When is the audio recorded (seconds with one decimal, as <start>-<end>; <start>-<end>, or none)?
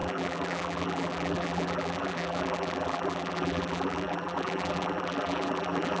none